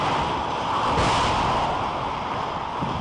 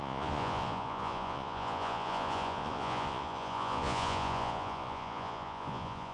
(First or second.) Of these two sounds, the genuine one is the first